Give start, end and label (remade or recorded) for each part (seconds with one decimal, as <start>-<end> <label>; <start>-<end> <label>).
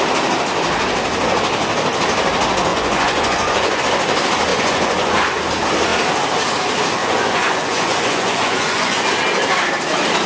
0.0-2.7 recorded; 2.7-3.8 remade; 3.8-4.5 recorded; 4.5-5.2 remade; 5.2-7.0 recorded; 7.0-9.1 remade; 9.1-10.3 recorded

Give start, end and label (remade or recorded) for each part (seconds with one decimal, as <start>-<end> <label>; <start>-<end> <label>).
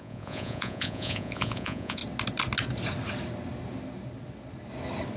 0.0-2.0 remade; 2.0-5.2 recorded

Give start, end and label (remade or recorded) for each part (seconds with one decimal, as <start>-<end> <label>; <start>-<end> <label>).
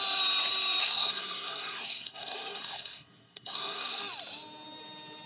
0.0-0.8 recorded; 0.8-4.0 remade; 4.0-5.3 recorded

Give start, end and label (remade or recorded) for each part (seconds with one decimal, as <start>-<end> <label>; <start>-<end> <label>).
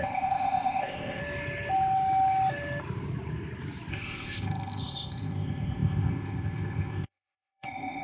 0.0-1.2 remade; 1.2-3.9 recorded; 3.9-8.0 remade